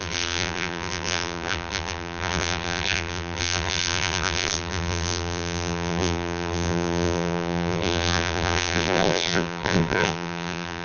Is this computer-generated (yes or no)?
yes